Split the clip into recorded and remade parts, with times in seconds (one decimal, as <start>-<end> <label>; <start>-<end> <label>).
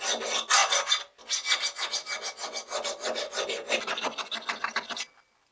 0.0-5.5 recorded